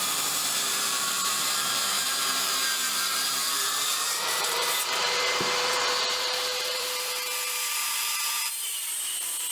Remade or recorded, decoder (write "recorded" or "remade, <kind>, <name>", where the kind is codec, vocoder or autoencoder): remade, vocoder, BigVGAN v2